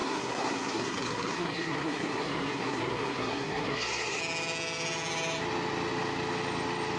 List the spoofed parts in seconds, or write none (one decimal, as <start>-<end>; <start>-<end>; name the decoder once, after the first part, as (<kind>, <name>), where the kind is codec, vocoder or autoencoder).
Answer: 0.0-4.2 (codec, SNAC)